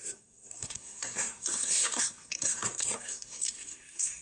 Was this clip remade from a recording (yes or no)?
yes